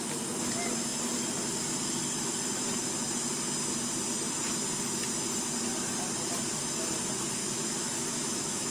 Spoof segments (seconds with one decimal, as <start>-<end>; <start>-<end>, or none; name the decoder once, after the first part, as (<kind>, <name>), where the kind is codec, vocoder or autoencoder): 7.4-8.7 (autoencoder, DAC-VAE)